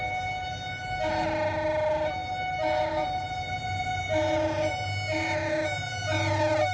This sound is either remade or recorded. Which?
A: recorded